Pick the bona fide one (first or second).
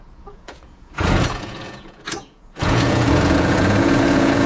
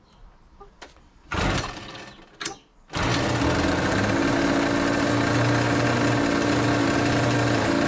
second